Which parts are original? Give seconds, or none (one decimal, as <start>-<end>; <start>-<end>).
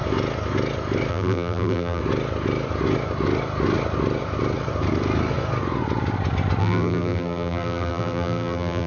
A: 0.0-1.1; 2.0-6.6